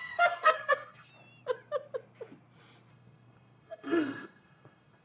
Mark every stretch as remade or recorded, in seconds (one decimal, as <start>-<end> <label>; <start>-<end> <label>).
0.0-1.1 remade; 1.1-2.9 recorded; 2.9-5.0 remade